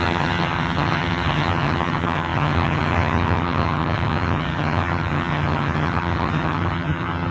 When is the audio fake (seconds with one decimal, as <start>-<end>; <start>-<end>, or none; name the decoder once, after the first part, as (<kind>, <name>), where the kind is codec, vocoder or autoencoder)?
0.0-7.3 (vocoder, HiFi-GAN)